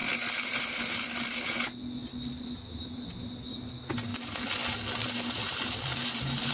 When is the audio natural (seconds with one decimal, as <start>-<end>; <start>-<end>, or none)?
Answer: 0.0-4.1